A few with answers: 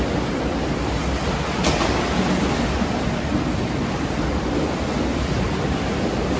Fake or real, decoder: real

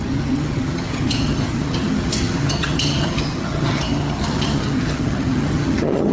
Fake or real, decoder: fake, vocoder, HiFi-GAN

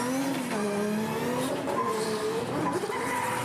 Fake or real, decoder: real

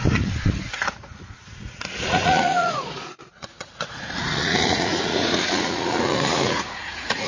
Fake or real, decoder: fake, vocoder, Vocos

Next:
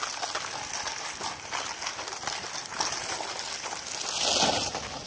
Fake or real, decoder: real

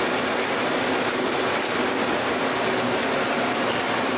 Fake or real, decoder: real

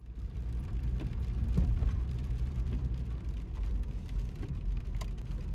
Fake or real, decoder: fake, vocoder, BigVGAN v2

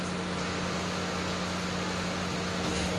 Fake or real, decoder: real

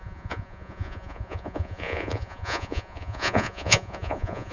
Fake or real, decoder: fake, vocoder, Vocos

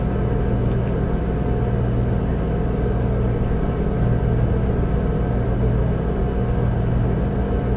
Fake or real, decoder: real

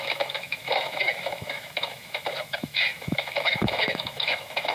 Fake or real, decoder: fake, autoencoder, DAC-VAE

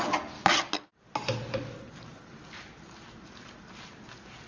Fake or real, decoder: real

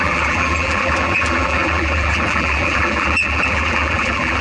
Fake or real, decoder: fake, vocoder, BigVGAN v2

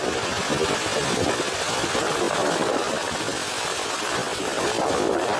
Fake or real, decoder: real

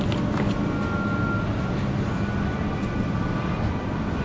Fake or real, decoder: real